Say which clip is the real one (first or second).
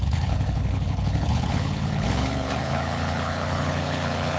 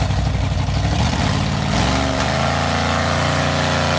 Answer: second